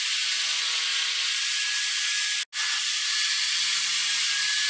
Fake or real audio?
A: real